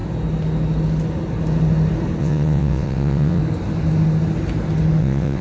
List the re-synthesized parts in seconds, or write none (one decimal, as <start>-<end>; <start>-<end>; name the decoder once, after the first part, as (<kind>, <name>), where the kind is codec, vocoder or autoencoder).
2.2-3.4 (vocoder, WaveNeXt); 5.0-5.4